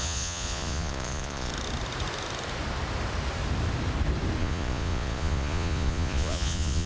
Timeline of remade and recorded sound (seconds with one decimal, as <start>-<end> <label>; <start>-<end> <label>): 0.0-1.5 remade; 1.5-4.4 recorded; 4.4-6.9 remade